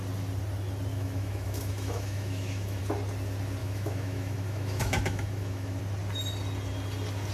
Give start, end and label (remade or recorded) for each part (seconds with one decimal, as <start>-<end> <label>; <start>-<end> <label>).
0.0-0.9 recorded; 0.9-2.8 remade; 2.8-3.6 recorded; 3.6-5.8 remade; 5.8-7.3 recorded